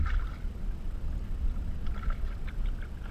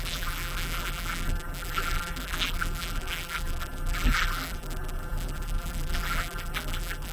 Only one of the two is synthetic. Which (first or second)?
second